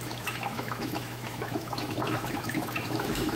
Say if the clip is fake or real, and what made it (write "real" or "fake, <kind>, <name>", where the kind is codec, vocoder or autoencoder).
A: fake, autoencoder, DAC-VAE